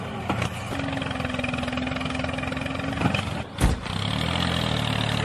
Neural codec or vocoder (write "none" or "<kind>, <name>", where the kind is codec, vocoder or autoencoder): none